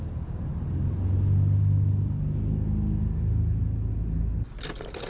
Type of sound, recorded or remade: recorded